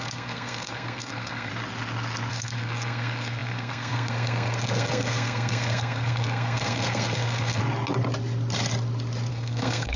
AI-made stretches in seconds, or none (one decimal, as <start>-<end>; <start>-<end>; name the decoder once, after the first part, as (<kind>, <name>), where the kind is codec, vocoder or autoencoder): 0.0-1.5 (codec, SNAC); 2.3-7.6; 9.3-10.0